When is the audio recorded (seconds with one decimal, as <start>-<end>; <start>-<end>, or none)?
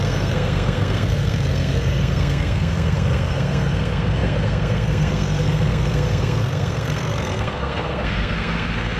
none